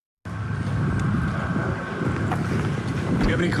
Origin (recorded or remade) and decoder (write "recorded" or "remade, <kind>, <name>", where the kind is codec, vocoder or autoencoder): recorded